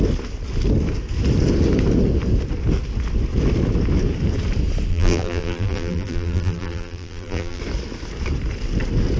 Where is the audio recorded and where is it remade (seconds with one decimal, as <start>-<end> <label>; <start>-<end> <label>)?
0.0-4.9 recorded; 4.9-7.6 remade; 7.6-9.2 recorded